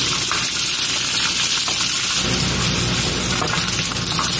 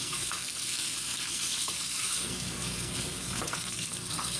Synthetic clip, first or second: second